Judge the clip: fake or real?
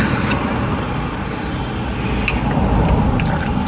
real